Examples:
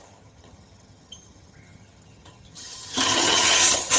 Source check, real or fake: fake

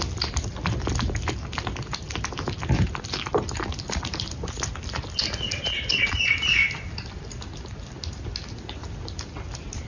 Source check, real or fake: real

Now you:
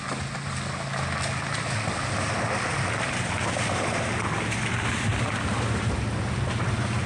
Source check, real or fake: real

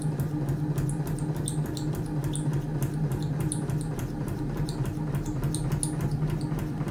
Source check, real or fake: real